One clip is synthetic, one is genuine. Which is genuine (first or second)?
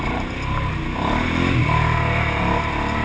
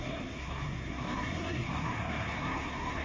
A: first